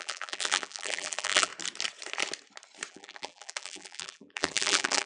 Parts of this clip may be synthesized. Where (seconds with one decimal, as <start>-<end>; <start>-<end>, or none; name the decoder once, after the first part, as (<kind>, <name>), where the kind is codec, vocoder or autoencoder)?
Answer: 0.0-1.5 (vocoder, BigVGAN v2); 2.9-5.1